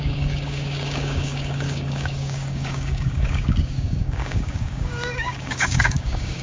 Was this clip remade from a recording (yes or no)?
yes